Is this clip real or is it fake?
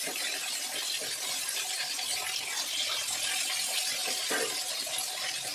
real